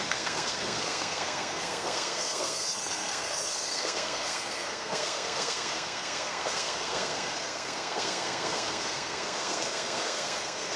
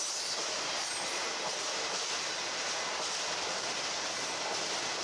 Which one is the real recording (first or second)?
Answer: second